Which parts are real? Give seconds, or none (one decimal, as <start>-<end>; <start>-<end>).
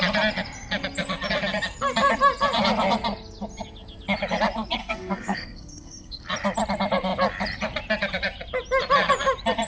0.0-4.8; 6.2-9.7